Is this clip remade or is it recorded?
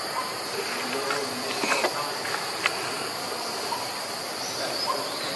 recorded